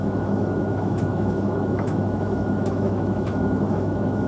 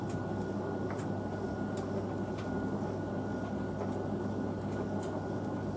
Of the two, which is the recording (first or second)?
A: second